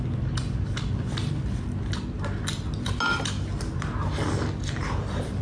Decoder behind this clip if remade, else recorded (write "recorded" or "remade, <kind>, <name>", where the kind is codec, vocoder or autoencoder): recorded